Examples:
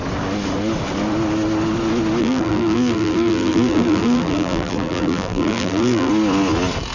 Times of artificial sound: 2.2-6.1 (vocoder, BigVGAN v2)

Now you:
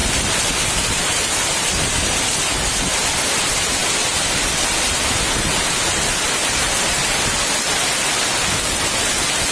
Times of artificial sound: none

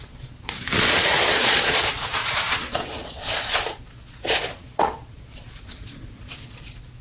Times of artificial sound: 0.0-7.0 (vocoder, Vocos)